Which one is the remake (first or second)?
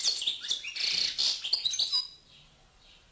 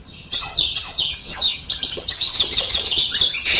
second